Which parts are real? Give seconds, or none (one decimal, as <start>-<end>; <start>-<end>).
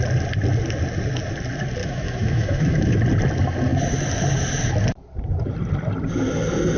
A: 0.0-1.8; 3.0-6.8